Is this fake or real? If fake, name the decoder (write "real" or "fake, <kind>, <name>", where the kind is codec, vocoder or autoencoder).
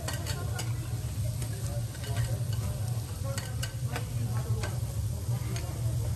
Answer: real